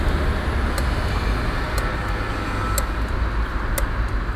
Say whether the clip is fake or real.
real